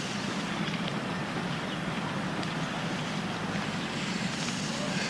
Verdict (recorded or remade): recorded